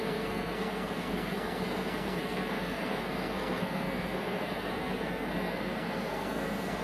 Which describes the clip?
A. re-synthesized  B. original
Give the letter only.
A